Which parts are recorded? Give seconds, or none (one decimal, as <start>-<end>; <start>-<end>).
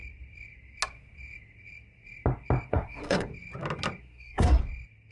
0.0-2.7; 3.3-4.0; 4.6-5.1